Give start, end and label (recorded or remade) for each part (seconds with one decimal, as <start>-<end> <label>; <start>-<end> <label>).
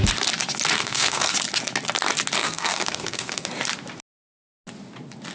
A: 0.0-0.8 recorded; 0.8-1.3 remade; 1.3-2.4 recorded; 2.4-3.5 remade; 3.5-5.3 recorded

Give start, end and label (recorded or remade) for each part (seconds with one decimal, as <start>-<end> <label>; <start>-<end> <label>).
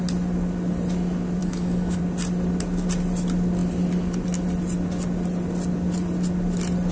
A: 0.0-1.4 recorded; 1.4-2.0 remade; 2.0-6.9 recorded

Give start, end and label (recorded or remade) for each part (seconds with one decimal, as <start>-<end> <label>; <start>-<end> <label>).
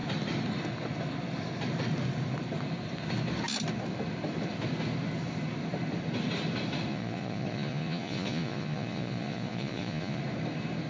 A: 0.0-6.9 recorded; 6.9-10.2 remade; 10.2-10.9 recorded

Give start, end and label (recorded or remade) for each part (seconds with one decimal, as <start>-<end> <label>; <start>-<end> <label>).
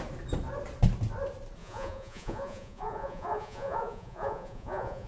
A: 0.0-1.6 recorded; 1.6-5.1 remade